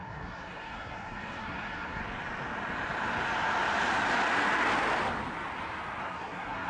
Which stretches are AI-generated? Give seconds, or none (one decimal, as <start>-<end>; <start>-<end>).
0.0-2.0; 6.0-6.7